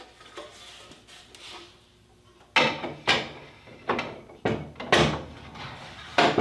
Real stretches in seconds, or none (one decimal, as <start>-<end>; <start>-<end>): 0.0-6.4